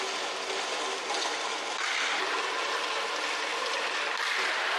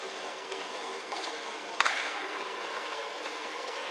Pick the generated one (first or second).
second